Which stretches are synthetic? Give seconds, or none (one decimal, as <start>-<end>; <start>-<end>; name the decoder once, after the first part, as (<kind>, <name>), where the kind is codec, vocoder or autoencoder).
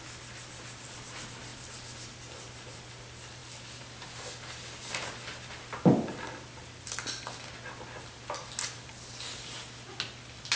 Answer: none